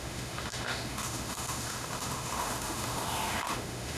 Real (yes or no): no